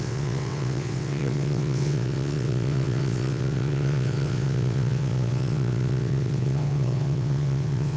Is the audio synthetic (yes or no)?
yes